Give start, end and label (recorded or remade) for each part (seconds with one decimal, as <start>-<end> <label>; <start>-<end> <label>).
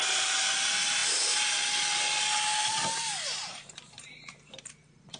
0.0-1.0 remade; 1.0-2.7 recorded; 2.7-5.2 remade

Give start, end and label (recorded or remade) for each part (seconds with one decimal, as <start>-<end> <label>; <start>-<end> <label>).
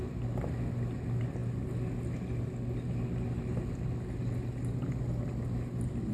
0.0-6.1 recorded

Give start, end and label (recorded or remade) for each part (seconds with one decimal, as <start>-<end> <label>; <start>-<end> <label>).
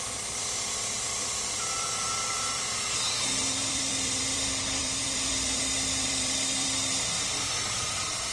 0.0-8.3 remade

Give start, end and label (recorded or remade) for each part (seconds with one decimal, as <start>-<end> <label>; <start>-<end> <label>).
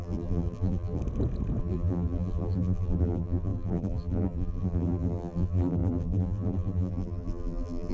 0.0-1.0 remade; 1.0-1.6 recorded; 1.6-7.9 remade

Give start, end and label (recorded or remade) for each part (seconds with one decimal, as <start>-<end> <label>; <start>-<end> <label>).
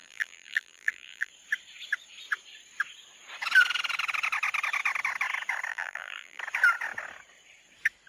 0.0-1.3 remade; 1.3-5.7 recorded; 5.7-6.4 remade; 6.4-8.1 recorded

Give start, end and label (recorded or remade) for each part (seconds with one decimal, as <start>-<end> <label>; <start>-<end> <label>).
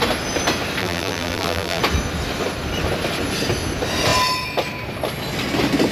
0.0-0.8 recorded; 0.8-1.8 remade; 1.8-5.9 recorded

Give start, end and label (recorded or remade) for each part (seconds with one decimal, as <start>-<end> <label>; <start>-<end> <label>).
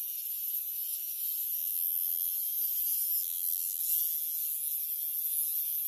0.0-1.6 recorded; 1.6-2.3 remade; 2.3-3.2 recorded; 3.2-3.8 remade; 3.8-5.9 recorded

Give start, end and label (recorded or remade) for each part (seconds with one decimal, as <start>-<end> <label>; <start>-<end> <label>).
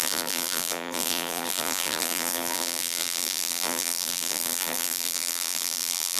0.0-6.2 remade